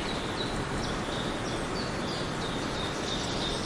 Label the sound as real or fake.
real